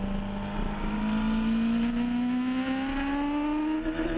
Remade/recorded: recorded